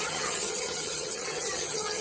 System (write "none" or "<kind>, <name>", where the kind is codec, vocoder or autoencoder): vocoder, HiFi-GAN